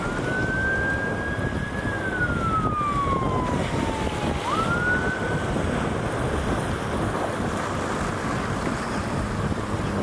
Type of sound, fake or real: real